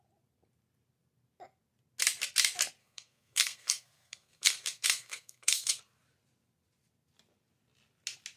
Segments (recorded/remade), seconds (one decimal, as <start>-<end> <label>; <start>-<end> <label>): 0.0-2.8 recorded; 2.8-5.8 remade; 5.8-8.4 recorded